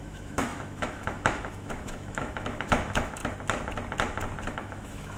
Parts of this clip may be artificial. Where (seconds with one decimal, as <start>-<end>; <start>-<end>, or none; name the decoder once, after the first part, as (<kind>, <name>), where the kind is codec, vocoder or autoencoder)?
0.0-3.2 (autoencoder, DAC-VAE); 4.5-5.2